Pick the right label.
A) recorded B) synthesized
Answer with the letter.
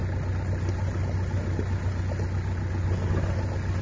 A